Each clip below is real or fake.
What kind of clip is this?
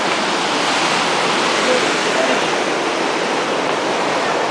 real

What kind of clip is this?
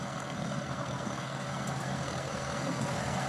fake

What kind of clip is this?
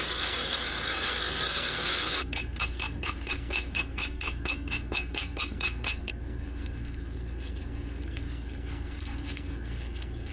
fake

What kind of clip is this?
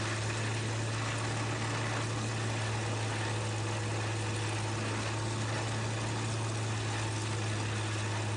real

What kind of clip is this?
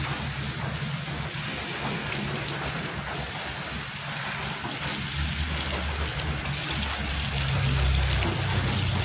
real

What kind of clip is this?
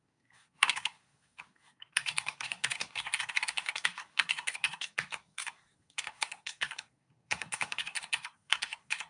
fake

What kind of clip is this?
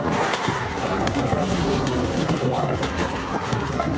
fake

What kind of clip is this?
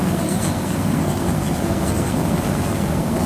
fake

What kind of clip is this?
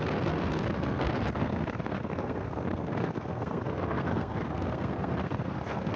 fake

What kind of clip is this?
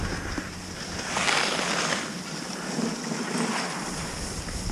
real